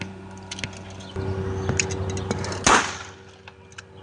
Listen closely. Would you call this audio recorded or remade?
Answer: recorded